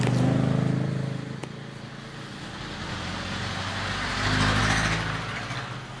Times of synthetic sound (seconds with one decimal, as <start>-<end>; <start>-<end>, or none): none